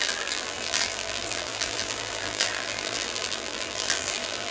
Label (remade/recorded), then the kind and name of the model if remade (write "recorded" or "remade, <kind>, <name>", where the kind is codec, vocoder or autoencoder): remade, vocoder, BigVGAN v2